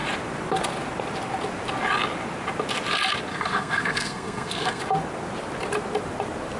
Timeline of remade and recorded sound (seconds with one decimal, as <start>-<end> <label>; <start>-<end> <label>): 0.0-3.3 recorded; 3.3-4.8 remade; 4.8-6.6 recorded